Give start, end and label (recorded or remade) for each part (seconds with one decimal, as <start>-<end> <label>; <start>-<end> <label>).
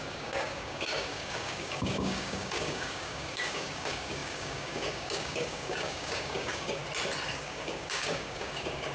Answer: 0.0-6.8 remade; 6.8-7.3 recorded; 7.3-8.9 remade